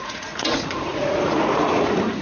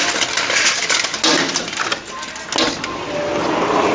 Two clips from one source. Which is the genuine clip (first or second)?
second